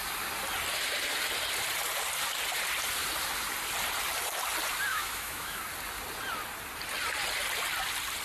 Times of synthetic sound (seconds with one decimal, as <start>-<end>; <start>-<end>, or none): 4.9-5.6